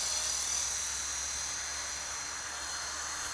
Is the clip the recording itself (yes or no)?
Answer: yes